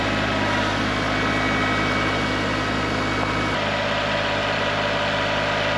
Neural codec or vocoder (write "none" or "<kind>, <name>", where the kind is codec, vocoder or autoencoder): none